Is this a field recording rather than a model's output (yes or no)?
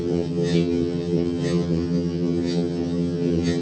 no